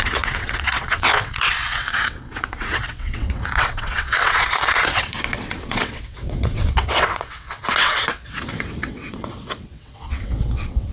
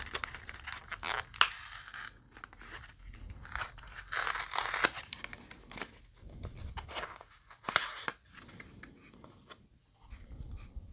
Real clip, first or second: second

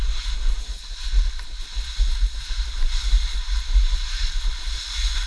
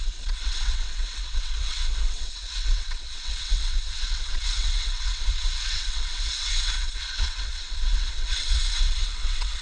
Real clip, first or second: first